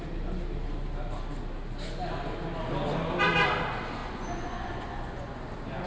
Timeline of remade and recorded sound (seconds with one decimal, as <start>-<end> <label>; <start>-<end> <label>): 0.0-4.0 recorded; 4.0-5.4 remade; 5.4-5.9 recorded